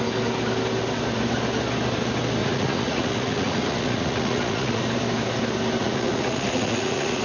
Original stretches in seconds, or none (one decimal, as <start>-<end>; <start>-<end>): 0.0-2.4; 4.8-5.8